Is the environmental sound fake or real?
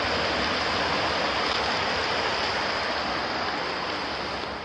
real